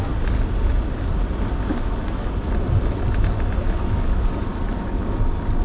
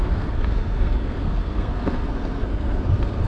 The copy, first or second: second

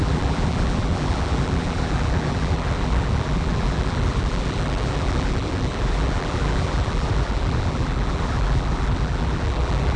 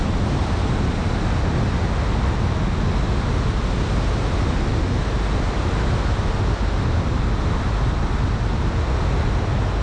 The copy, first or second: first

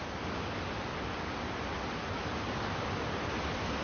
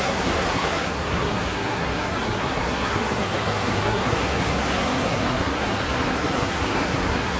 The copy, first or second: second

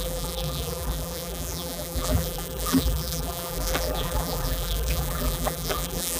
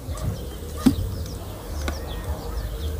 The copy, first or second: first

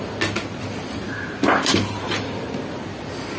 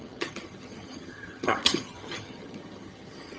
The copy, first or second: second